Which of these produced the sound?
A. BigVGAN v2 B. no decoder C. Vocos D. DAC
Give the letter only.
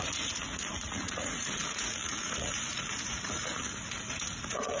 C